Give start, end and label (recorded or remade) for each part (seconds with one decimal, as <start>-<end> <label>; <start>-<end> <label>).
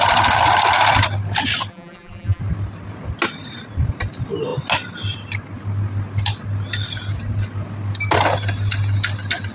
0.0-1.7 recorded; 1.7-2.4 remade; 2.4-9.5 recorded